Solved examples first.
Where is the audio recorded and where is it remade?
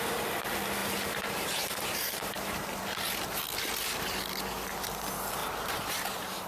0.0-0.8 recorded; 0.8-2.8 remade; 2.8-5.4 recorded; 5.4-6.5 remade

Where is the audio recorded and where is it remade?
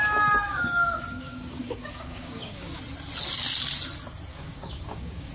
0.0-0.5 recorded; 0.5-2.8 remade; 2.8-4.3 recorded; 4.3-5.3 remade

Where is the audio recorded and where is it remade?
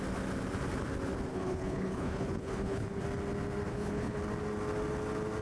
0.0-1.3 recorded; 1.3-3.0 remade; 3.0-3.7 recorded; 3.7-4.2 remade; 4.2-5.4 recorded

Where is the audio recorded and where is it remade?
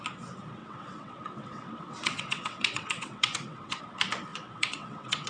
0.0-0.6 recorded; 0.6-3.8 remade; 3.8-4.3 recorded; 4.3-5.3 remade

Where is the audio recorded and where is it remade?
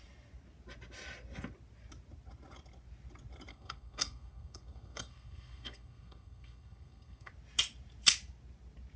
0.0-3.5 recorded; 3.5-7.3 remade; 7.3-9.0 recorded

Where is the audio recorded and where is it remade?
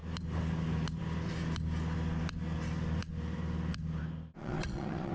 0.0-4.4 recorded; 4.4-5.1 remade